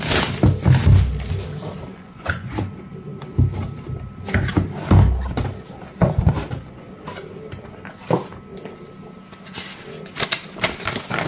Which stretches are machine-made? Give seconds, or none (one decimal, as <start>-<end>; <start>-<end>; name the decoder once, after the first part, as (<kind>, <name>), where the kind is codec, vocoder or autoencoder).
1.9-2.6 (vocoder, Vocos)